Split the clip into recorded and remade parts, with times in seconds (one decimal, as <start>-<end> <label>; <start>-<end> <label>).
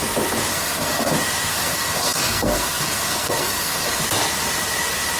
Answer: 0.0-0.5 recorded; 0.5-1.1 remade; 1.1-1.5 recorded; 1.5-4.0 remade; 4.0-5.2 recorded